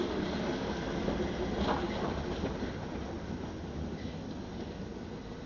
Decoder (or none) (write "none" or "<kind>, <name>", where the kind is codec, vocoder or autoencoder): none